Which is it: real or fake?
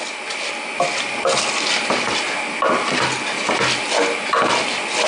real